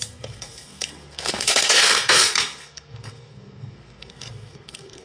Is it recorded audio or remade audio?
remade